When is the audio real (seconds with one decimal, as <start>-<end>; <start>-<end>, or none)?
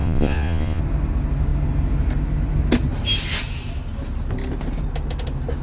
0.8-5.6